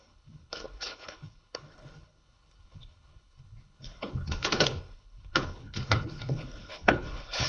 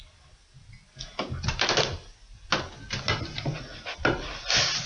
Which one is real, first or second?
second